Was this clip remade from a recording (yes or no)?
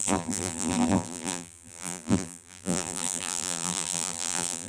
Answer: yes